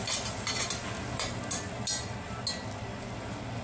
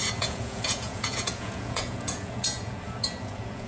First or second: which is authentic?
first